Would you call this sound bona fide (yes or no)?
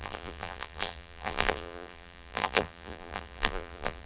no